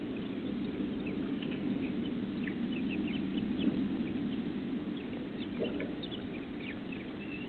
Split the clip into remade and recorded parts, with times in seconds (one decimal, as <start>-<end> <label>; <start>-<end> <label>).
0.0-1.3 recorded; 1.3-1.8 remade; 1.8-7.5 recorded